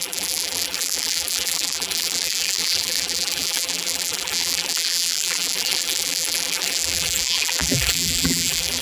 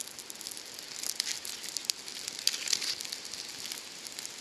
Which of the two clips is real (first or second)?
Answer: second